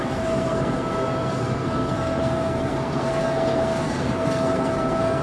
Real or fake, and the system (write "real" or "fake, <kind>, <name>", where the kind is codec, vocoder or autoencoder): fake, codec, SNAC